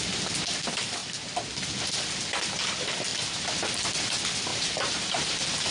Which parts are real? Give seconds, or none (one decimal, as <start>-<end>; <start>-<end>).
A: 0.0-5.7